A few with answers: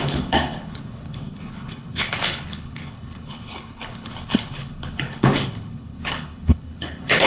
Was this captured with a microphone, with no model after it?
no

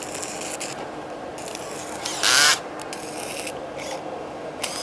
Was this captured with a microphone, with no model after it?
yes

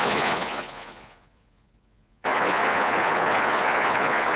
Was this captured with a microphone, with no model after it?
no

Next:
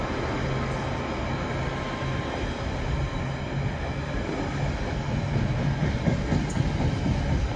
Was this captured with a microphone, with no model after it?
yes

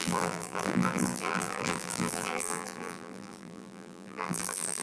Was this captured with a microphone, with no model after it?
no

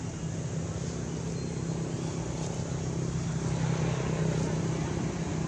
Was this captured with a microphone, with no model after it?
yes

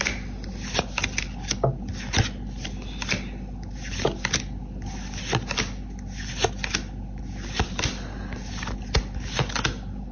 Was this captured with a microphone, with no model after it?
yes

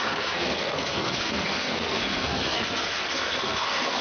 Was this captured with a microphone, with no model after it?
no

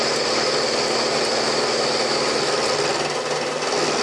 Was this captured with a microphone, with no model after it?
yes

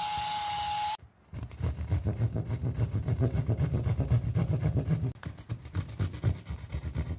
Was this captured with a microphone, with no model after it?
yes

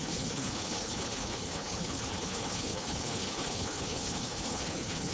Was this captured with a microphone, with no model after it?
no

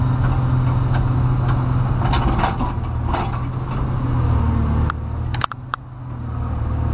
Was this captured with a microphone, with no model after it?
yes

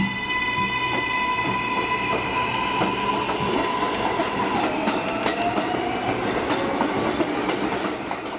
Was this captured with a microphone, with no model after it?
yes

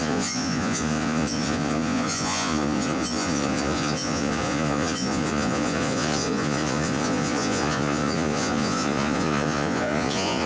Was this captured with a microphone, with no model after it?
no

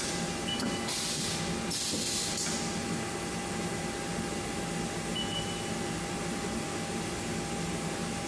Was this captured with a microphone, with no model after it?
yes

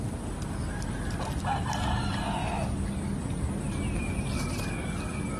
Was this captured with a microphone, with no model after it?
yes